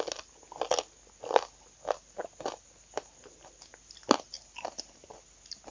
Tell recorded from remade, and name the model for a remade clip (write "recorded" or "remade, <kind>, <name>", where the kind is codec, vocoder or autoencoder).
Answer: recorded